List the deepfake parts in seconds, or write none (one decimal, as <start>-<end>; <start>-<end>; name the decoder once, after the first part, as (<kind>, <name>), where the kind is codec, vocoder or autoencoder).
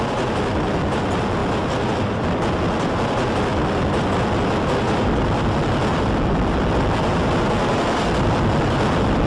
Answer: none